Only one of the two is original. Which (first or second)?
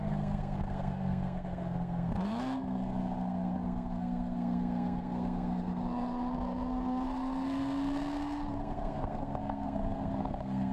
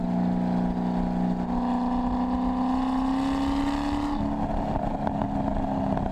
second